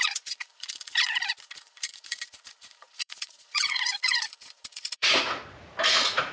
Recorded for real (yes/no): no